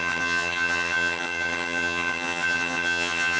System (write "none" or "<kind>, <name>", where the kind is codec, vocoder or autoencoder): vocoder, HiFi-GAN